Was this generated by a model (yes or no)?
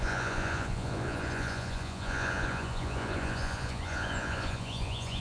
yes